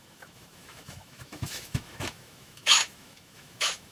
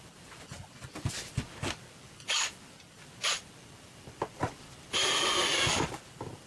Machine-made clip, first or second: first